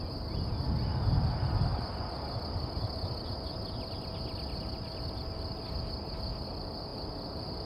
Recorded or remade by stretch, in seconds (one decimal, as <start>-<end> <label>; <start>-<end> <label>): 0.0-7.7 recorded